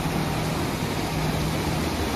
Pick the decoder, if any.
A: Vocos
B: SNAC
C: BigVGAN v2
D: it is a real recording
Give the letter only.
D